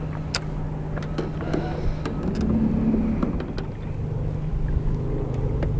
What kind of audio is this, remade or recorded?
recorded